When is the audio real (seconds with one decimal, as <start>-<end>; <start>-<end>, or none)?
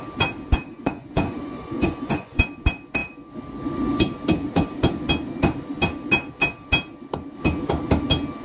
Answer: 0.0-0.7; 2.4-8.4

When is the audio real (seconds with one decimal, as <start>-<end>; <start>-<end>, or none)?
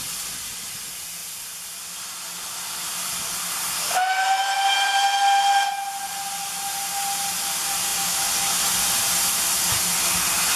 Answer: 0.0-10.6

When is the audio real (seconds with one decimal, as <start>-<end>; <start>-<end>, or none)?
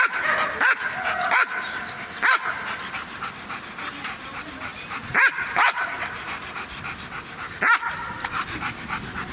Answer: 0.0-4.7; 6.5-9.3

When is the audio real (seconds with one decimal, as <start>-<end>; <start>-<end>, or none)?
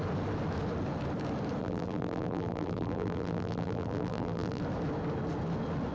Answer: 0.0-1.6; 4.6-5.9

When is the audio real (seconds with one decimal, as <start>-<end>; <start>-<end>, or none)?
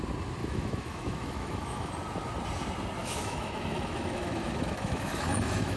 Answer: 0.0-0.4; 1.9-3.0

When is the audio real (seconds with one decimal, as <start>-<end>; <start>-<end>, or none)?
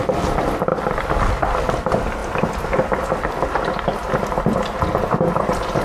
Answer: 0.0-2.2; 4.2-5.8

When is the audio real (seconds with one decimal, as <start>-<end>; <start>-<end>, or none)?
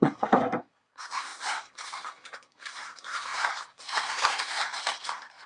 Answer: none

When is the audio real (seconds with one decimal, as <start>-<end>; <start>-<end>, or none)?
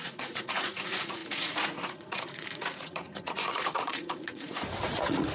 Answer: none